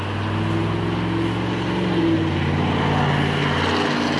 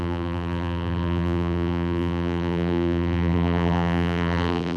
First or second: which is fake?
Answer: second